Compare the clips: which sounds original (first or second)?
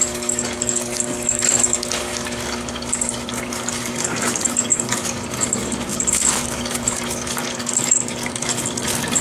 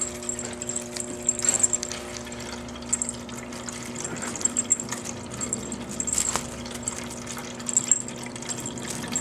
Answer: second